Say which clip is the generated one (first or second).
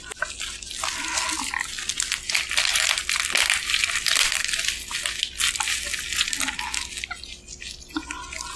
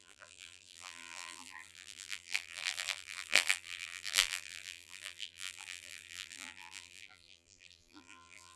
second